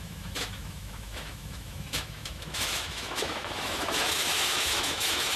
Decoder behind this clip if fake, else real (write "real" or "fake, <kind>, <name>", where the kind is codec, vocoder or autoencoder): fake, autoencoder, DAC-VAE